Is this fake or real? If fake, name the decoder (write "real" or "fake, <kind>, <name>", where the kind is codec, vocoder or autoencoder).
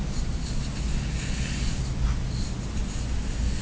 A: real